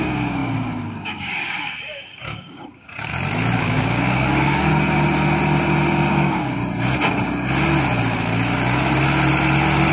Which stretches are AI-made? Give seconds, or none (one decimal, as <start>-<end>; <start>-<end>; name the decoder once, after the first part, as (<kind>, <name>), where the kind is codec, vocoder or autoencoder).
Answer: 0.0-3.1 (codec, DAC); 3.6-4.7; 6.1-6.6